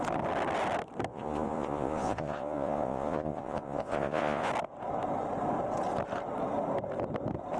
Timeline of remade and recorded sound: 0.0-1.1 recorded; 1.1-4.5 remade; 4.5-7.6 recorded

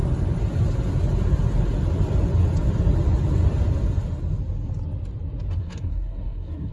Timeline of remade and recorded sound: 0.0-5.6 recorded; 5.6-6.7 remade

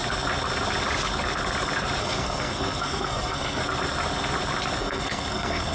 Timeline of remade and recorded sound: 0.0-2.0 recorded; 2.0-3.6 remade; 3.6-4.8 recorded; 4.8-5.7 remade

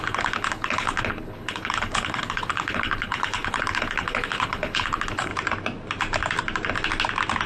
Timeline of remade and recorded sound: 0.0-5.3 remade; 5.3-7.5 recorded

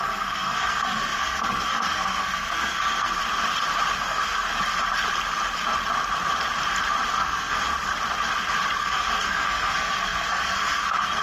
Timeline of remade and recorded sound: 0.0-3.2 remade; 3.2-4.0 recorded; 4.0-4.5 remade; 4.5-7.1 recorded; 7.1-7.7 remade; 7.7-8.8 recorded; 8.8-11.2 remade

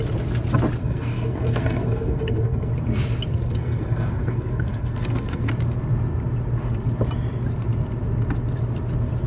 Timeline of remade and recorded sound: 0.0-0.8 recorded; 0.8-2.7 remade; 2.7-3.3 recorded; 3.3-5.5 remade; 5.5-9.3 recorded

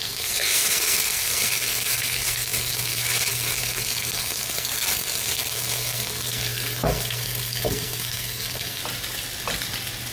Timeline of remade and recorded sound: 0.0-8.8 remade; 8.8-10.1 recorded

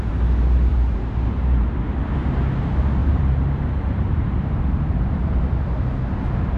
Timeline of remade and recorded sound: 0.0-0.7 recorded; 0.7-1.8 remade; 1.8-3.0 recorded; 3.0-5.7 remade; 5.7-6.6 recorded